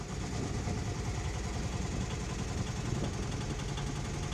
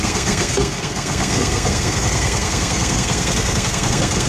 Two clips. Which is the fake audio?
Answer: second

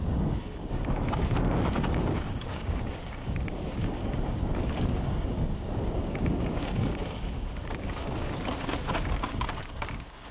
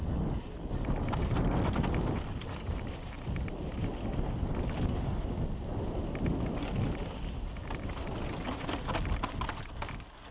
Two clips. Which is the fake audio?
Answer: first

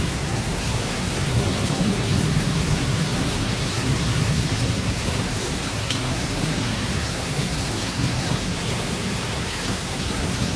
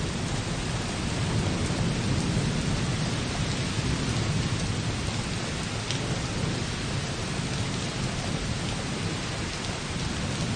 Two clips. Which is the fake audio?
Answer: first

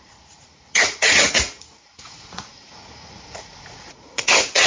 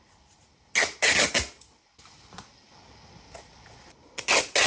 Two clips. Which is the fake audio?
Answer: first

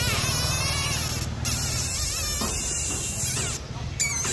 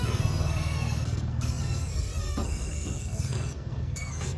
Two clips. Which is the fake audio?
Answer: second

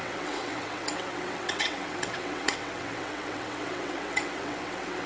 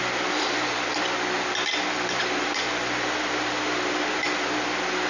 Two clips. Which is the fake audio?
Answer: first